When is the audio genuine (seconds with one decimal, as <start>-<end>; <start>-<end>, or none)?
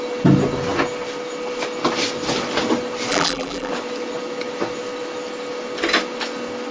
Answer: 0.0-3.1; 3.7-6.7